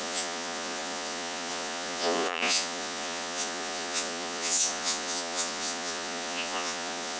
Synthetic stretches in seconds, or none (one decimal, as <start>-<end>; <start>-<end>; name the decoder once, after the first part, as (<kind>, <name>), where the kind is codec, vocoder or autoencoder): 0.0-7.2 (vocoder, Vocos)